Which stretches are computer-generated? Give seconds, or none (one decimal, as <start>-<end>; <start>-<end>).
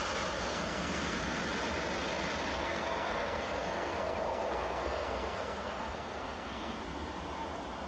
0.4-1.4; 2.5-6.8